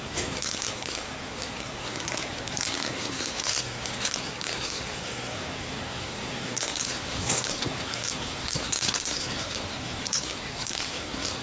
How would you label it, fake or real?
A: fake